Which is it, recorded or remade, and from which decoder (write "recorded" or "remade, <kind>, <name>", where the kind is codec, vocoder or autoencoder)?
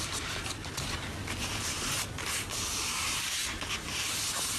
recorded